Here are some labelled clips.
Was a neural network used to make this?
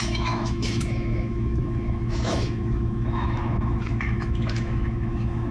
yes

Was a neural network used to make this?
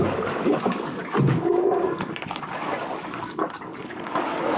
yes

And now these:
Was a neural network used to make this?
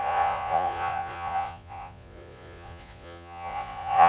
yes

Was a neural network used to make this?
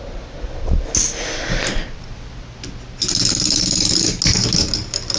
no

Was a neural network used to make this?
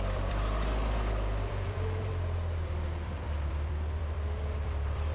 yes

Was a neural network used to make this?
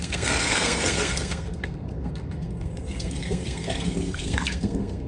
yes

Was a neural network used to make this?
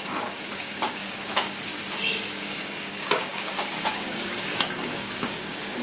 yes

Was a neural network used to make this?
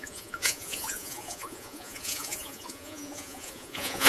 yes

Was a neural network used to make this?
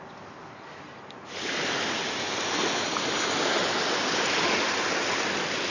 no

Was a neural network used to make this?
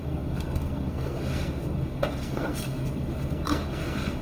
yes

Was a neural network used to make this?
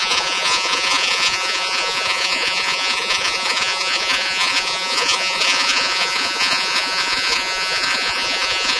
yes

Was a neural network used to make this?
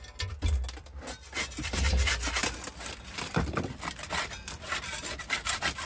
no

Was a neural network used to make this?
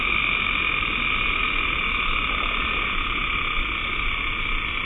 no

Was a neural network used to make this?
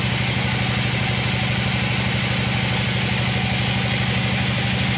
no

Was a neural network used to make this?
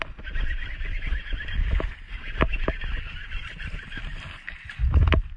no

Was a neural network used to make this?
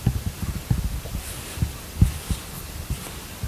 no